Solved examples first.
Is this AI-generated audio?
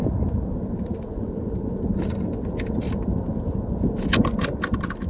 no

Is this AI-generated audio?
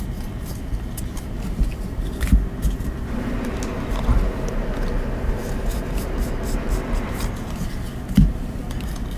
no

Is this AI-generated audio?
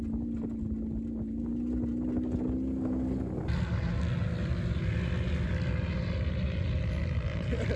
no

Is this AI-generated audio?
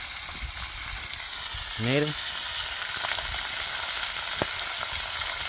no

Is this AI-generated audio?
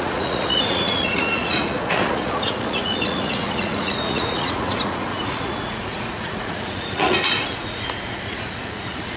yes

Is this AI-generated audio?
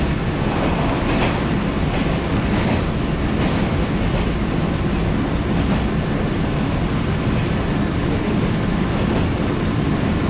no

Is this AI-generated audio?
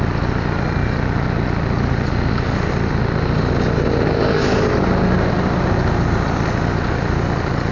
no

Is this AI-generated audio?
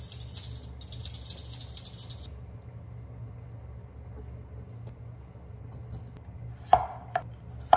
no